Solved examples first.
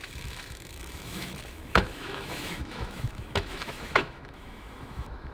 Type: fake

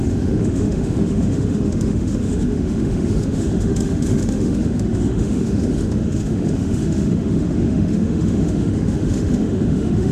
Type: fake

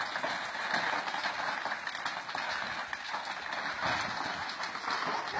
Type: real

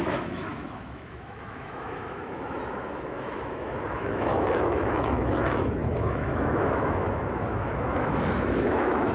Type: fake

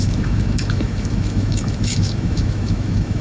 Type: fake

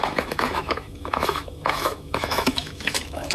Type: fake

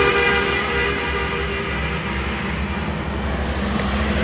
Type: real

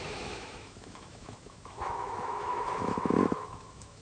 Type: fake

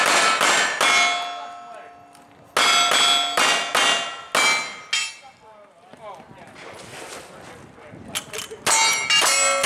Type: real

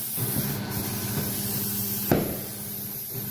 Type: real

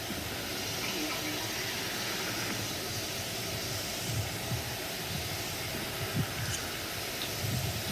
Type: real